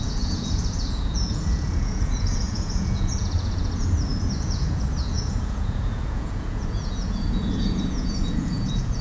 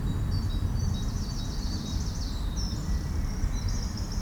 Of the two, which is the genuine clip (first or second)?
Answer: second